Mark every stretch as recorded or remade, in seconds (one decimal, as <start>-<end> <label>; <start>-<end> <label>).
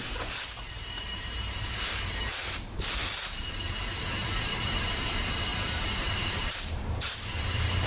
0.0-7.9 remade